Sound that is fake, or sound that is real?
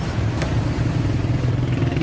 real